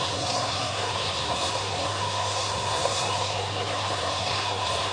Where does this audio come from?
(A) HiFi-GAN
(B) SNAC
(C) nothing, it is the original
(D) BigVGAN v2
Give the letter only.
B